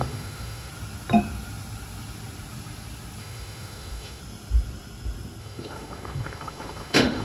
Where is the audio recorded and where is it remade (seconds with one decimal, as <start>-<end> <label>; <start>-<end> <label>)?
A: 0.0-0.7 remade; 0.7-3.2 recorded; 3.2-4.2 remade; 4.2-5.4 recorded; 5.4-7.2 remade